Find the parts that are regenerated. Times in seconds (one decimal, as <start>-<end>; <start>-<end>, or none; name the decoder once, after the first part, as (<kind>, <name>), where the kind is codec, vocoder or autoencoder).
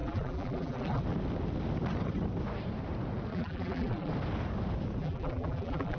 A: 0.0-1.0 (vocoder, BigVGAN v2); 3.3-4.1; 5.0-6.0